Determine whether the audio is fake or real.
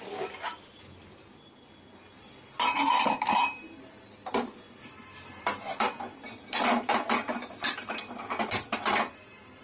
real